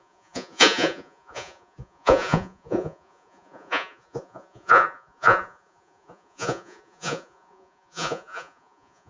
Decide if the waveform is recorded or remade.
remade